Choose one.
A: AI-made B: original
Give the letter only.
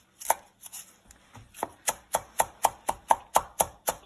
B